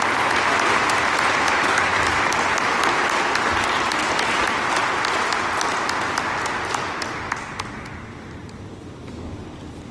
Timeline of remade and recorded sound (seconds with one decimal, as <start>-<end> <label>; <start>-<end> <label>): 0.0-9.9 recorded